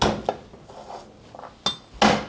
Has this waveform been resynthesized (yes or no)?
no